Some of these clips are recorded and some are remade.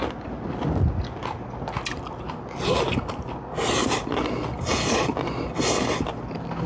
recorded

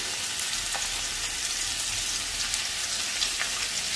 recorded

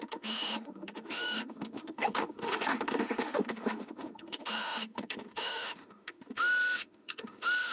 remade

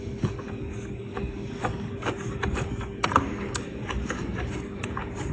remade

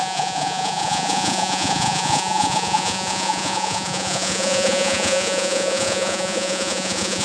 remade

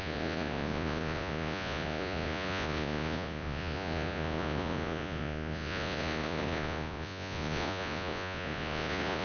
remade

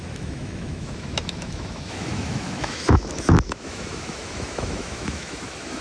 remade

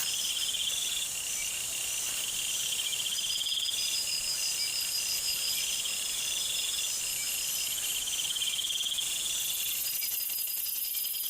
recorded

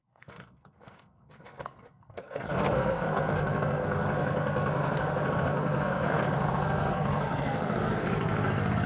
remade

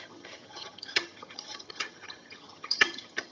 remade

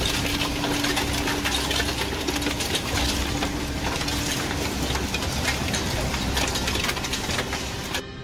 recorded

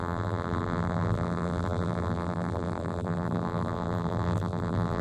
remade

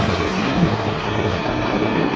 remade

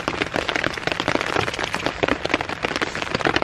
recorded